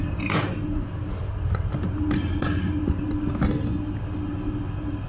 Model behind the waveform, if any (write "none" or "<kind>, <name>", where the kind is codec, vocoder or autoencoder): none